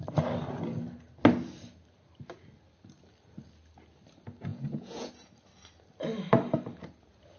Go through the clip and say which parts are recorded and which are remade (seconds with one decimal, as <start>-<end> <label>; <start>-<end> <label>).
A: 0.0-4.5 recorded; 4.5-5.1 remade; 5.1-7.4 recorded